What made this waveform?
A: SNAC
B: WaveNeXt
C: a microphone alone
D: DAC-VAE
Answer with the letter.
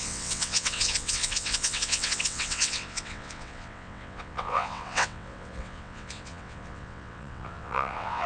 B